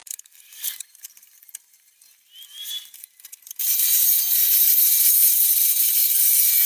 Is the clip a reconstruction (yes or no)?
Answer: yes